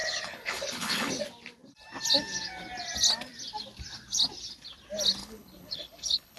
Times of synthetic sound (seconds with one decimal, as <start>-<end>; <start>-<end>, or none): 0.0-1.1; 5.2-6.4